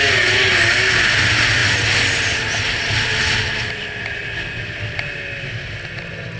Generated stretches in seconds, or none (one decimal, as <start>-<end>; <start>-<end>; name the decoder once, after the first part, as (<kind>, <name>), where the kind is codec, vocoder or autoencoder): none

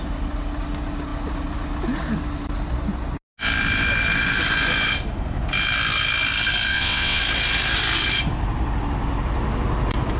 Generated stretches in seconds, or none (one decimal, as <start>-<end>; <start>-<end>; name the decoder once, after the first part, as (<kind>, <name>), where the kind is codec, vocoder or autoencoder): 6.7-7.2 (vocoder, WaveNeXt)

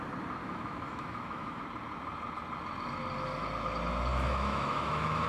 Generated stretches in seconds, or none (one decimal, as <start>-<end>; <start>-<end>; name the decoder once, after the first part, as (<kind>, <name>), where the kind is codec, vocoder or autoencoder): 0.4-1.6 (autoencoder, DAC-VAE); 4.1-5.3

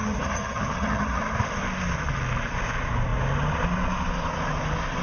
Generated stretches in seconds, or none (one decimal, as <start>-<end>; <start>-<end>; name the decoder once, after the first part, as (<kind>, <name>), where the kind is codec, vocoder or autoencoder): 0.0-1.2 (vocoder, HiFi-GAN)

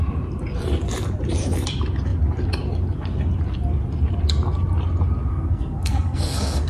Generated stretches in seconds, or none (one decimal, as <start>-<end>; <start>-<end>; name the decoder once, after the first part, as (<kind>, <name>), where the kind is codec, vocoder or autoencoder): 5.3-6.7 (codec, SNAC)

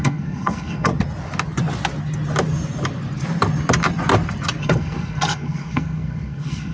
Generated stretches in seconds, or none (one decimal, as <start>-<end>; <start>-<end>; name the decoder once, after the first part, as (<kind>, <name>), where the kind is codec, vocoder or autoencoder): 0.0-0.9 (codec, SNAC); 4.6-6.7

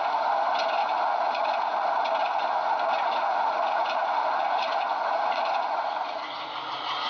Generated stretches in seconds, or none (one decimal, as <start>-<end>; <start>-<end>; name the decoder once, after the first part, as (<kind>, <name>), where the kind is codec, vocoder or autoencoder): 0.8-1.8 (vocoder, Vocos); 2.2-6.5